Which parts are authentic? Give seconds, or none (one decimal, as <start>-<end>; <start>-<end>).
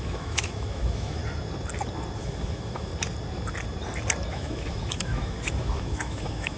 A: 1.2-2.2; 2.9-4.3